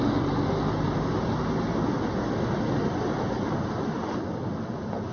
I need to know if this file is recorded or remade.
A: recorded